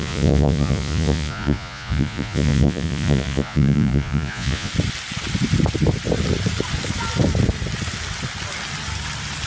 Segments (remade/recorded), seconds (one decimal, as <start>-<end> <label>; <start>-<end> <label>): 0.0-4.7 remade; 4.7-9.5 recorded